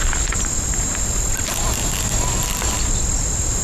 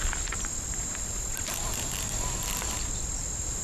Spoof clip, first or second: second